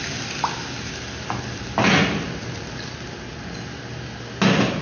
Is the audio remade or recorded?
recorded